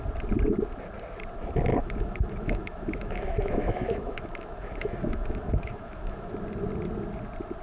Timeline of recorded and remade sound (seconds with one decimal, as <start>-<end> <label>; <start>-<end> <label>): 0.0-1.7 recorded; 1.7-6.3 remade; 6.3-7.6 recorded